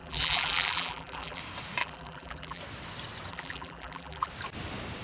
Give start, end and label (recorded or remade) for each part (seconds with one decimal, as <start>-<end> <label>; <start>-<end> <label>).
0.0-1.4 remade; 1.4-1.8 recorded; 1.8-2.6 remade; 2.6-3.3 recorded; 3.3-4.3 remade; 4.3-5.0 recorded

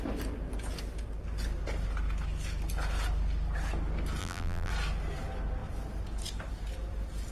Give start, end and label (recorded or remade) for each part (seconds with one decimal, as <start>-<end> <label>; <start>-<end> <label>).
0.0-4.2 recorded; 4.2-4.7 remade; 4.7-7.3 recorded

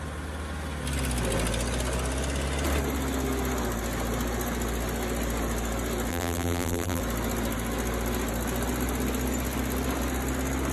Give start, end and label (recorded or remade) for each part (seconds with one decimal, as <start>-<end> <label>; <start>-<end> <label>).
0.0-6.1 recorded; 6.1-7.0 remade; 7.0-10.7 recorded

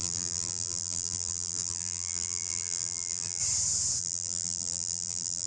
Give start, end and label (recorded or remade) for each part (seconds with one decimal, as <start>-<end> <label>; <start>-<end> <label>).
0.0-3.4 remade; 3.4-4.0 recorded; 4.0-5.5 remade